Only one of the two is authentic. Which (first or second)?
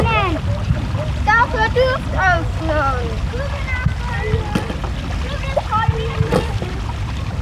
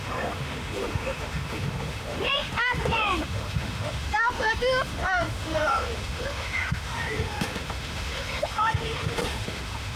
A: first